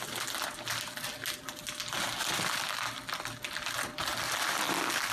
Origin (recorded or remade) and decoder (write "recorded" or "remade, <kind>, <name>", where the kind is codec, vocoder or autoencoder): recorded